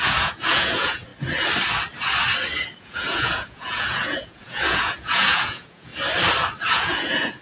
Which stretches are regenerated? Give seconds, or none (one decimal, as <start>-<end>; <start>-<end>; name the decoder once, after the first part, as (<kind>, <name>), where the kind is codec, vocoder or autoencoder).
0.0-1.1 (vocoder, Vocos); 2.8-5.9; 6.7-7.4